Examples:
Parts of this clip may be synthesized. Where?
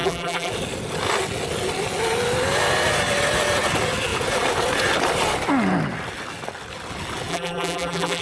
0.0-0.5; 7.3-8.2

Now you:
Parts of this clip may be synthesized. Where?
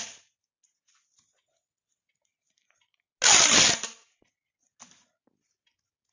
none